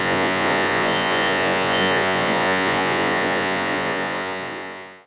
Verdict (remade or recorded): remade